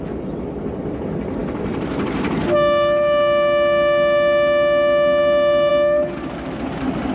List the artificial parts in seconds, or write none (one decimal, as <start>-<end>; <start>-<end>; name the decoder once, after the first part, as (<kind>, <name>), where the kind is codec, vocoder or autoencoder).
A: none